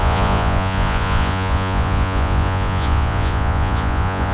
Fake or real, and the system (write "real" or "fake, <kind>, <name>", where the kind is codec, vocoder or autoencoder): fake, vocoder, Vocos